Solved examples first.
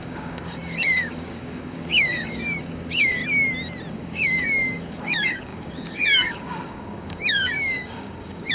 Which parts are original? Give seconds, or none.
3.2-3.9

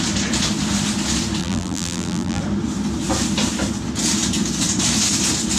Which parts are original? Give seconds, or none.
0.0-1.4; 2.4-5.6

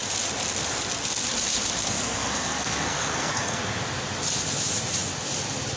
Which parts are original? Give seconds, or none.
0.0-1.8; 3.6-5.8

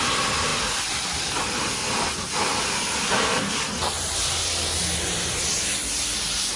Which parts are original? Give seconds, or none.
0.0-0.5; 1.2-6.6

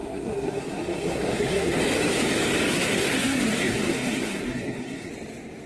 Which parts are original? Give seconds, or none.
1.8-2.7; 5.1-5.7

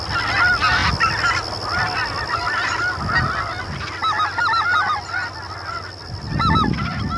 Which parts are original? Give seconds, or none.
0.0-7.2